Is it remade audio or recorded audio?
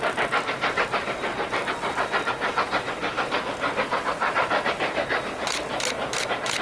remade